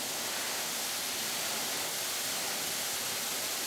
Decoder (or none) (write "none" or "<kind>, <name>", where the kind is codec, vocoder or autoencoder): none